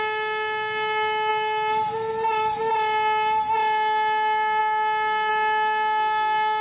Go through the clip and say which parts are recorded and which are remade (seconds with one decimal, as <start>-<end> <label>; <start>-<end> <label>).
0.0-6.6 recorded